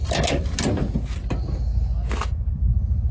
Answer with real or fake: real